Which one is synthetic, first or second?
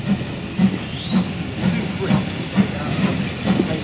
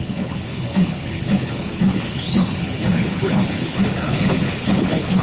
second